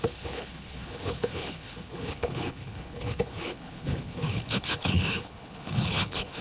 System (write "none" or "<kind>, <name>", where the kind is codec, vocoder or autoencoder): codec, HILCodec